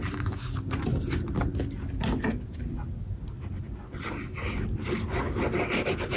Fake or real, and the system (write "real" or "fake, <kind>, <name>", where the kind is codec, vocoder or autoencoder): real